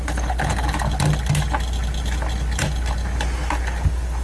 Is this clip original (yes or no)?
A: yes